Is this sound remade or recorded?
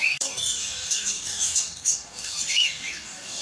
remade